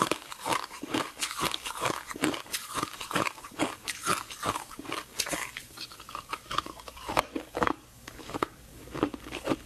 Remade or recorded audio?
remade